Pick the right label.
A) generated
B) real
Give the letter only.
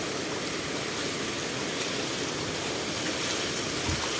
B